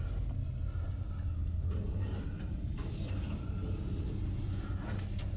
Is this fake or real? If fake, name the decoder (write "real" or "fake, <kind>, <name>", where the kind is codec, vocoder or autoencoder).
real